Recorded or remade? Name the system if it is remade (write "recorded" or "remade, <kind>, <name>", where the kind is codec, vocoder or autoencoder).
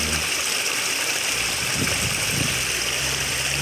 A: remade, vocoder, BigVGAN v2